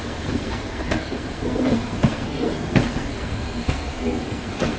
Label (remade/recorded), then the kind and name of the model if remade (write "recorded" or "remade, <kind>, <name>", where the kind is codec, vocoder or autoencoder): remade, codec, SNAC